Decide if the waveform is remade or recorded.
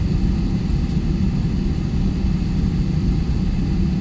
recorded